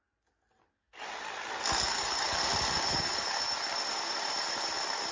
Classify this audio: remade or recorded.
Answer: recorded